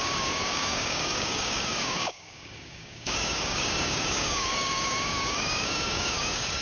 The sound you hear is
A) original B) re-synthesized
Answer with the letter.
B